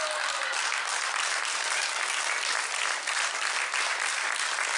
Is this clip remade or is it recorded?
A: recorded